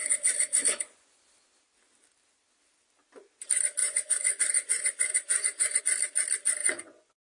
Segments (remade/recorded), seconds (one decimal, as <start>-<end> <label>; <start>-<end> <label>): 0.0-1.2 remade; 1.2-3.8 recorded; 3.8-5.8 remade; 5.8-6.6 recorded; 6.6-7.4 remade